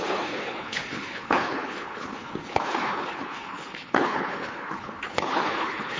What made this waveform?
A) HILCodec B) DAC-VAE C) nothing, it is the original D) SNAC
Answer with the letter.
A